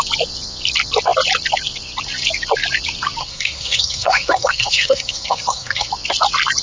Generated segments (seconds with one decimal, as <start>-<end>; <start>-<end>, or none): 3.2-5.9